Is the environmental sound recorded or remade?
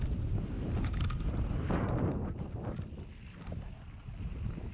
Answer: recorded